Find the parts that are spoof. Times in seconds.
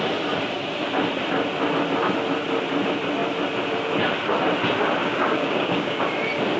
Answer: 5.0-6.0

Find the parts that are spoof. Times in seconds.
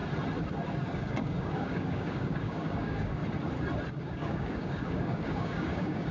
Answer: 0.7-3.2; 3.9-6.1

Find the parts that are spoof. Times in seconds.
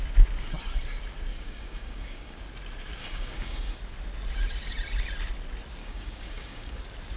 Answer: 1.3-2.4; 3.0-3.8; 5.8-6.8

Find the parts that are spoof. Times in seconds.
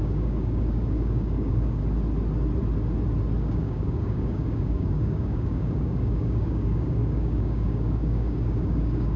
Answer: 0.0-1.8; 3.4-9.2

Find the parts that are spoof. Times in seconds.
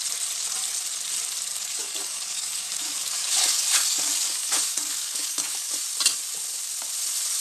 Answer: 1.5-5.8